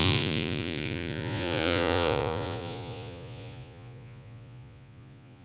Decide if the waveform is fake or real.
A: fake